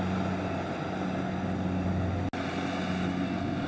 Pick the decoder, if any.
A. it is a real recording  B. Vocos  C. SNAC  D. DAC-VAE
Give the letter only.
A